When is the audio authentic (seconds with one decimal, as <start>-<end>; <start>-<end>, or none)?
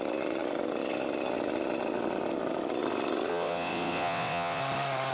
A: 0.0-3.3; 4.6-5.1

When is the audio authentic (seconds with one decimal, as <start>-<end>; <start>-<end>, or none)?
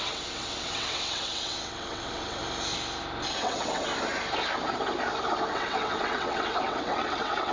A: 2.4-3.2; 3.9-5.5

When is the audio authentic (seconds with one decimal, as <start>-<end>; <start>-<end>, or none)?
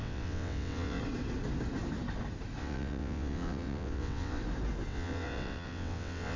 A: 1.0-2.6; 4.4-4.9